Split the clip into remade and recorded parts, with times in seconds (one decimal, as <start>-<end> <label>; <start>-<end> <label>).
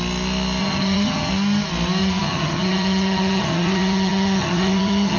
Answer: 0.0-0.6 recorded; 0.6-1.3 remade; 1.3-2.0 recorded; 2.0-5.2 remade